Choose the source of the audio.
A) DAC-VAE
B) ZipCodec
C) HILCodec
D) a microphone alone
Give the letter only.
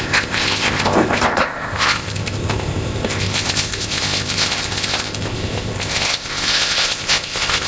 B